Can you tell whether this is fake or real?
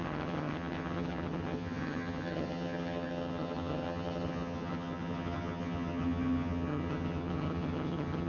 fake